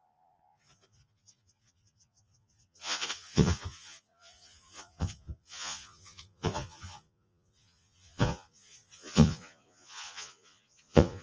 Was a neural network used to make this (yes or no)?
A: yes